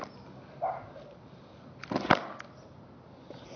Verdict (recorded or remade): recorded